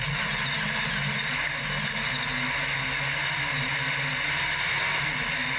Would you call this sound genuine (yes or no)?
yes